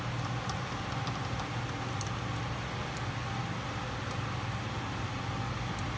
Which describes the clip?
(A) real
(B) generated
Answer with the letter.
A